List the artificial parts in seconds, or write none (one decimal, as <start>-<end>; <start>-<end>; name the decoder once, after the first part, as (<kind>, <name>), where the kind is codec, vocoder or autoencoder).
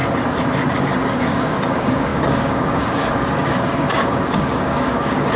0.8-5.4 (codec, DAC)